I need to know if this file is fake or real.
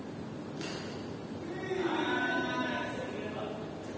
real